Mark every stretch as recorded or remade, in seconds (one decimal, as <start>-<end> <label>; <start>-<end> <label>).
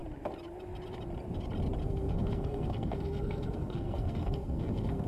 0.0-1.8 recorded; 1.8-5.1 remade